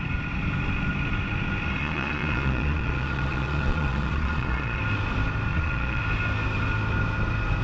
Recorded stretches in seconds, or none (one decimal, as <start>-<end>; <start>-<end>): 0.0-1.8; 4.8-5.5; 6.0-7.6